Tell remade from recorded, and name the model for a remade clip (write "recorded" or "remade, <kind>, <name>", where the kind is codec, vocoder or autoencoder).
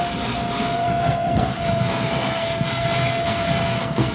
remade, codec, SNAC